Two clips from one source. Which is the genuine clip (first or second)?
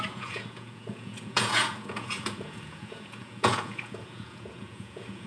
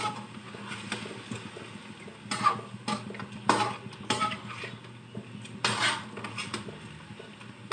second